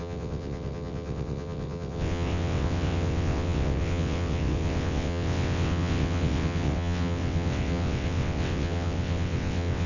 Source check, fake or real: fake